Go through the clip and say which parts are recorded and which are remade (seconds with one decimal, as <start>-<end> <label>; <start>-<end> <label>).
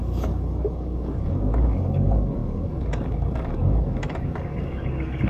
0.0-5.3 remade